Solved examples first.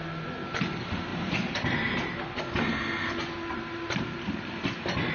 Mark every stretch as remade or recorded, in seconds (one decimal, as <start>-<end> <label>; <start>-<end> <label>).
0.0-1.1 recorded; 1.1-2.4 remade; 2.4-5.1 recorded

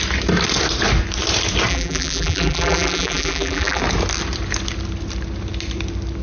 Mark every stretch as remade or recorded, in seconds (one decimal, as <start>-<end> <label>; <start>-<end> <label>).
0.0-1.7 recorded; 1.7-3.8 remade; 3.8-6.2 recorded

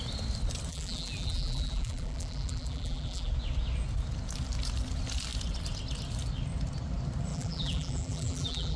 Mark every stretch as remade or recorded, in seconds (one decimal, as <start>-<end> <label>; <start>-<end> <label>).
0.0-0.7 recorded; 0.7-3.3 remade; 3.3-7.3 recorded; 7.3-8.8 remade

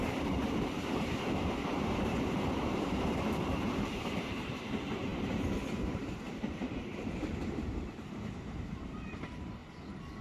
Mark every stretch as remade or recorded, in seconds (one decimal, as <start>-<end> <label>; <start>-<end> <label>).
0.0-0.4 remade; 0.4-1.7 recorded; 1.7-9.6 remade; 9.6-10.2 recorded